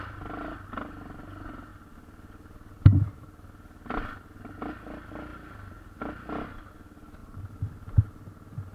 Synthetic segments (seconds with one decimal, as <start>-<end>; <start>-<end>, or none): none